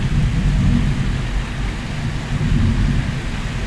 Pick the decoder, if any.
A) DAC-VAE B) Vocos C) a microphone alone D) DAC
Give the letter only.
C